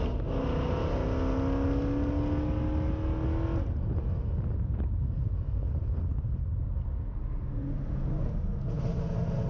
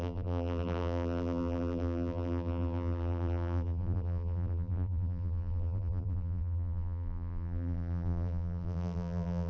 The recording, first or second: first